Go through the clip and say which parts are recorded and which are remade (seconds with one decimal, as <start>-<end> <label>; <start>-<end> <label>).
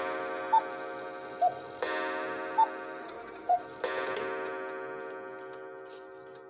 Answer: 0.0-3.0 recorded; 3.0-3.6 remade; 3.6-6.5 recorded